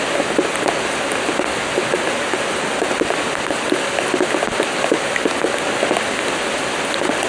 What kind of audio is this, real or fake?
real